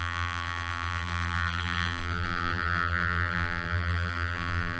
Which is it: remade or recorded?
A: remade